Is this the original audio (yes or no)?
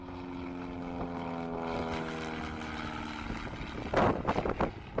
yes